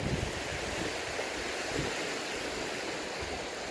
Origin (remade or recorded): recorded